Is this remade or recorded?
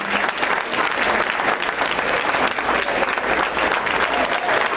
recorded